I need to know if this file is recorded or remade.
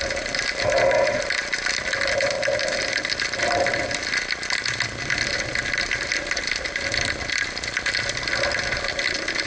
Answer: recorded